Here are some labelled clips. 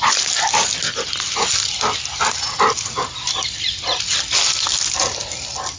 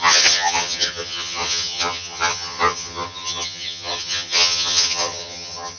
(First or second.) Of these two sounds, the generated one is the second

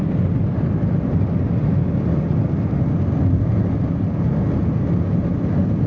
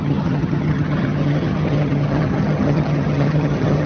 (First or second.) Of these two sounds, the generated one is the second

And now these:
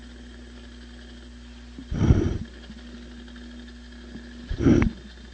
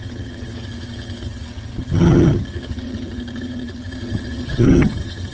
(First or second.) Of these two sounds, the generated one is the second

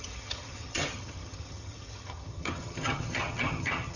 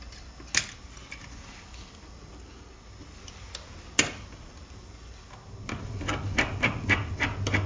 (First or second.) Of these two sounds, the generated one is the first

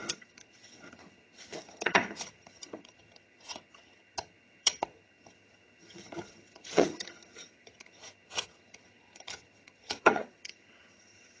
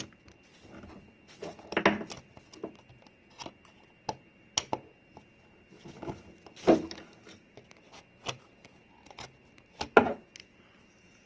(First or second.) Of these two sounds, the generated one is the first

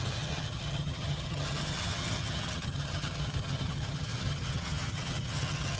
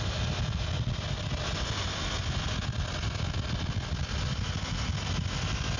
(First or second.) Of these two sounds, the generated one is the first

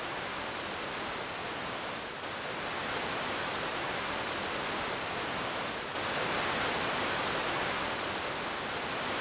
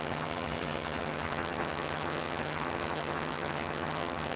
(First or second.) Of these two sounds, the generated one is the second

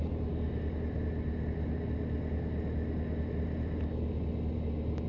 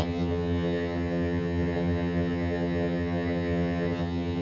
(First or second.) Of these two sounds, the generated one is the second